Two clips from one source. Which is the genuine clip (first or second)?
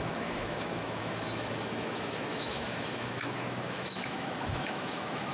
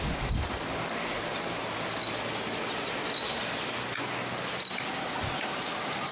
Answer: second